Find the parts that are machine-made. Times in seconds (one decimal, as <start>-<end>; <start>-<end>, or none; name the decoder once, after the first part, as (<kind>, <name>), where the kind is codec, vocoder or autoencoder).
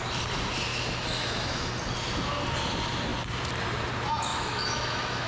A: 0.7-1.7 (autoencoder, DAC-VAE); 4.3-5.3